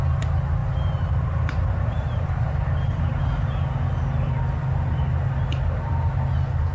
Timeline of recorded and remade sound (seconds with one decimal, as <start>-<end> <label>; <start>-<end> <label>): 0.0-0.6 recorded; 0.6-3.0 remade; 3.0-6.7 recorded